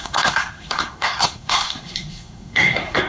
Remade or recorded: remade